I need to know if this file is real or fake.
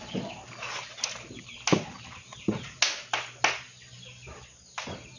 real